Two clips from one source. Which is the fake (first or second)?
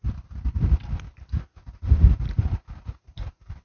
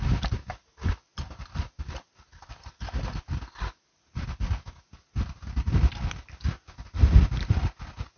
first